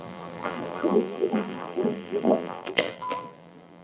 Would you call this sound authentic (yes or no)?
no